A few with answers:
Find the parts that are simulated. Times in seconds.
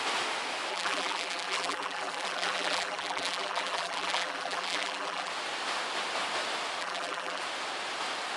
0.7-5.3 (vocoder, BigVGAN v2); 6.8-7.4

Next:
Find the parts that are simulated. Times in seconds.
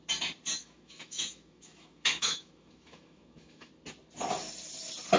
0.6-3.7 (autoencoder, DAC-VAE)